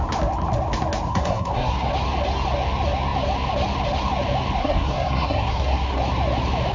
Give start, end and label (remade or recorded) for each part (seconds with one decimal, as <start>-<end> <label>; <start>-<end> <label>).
0.0-1.1 recorded; 1.1-1.9 remade; 1.9-4.6 recorded; 4.6-6.0 remade; 6.0-6.7 recorded